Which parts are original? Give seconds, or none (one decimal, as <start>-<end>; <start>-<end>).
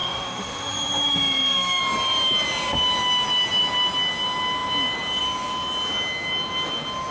1.8-7.1